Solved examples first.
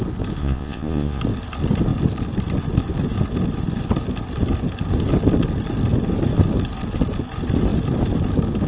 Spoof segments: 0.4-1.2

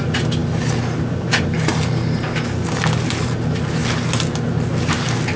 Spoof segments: none

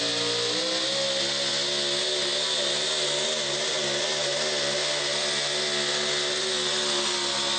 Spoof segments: none

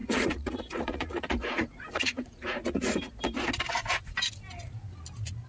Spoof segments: 0.0-3.1